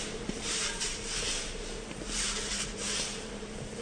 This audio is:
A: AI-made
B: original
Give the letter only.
A